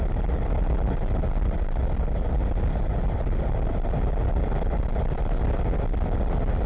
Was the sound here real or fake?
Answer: real